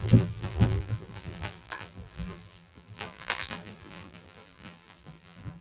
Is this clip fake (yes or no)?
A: yes